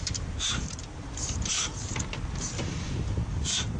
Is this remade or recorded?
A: remade